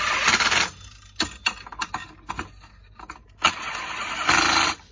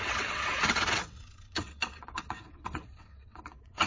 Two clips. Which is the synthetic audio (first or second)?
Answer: second